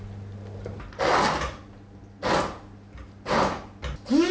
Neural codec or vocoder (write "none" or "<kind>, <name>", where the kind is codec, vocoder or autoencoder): none